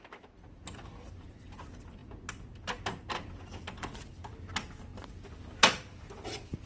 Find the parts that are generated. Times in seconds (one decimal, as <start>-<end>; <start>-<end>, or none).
none